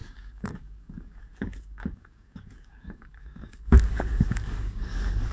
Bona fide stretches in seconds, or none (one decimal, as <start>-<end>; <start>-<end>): none